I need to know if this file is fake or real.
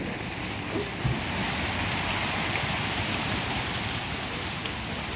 real